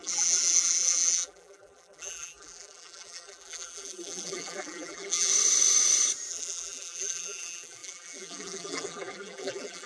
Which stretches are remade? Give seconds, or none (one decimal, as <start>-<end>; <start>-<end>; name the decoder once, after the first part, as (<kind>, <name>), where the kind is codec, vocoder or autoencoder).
0.0-5.3 (vocoder, BigVGAN v2); 6.3-9.9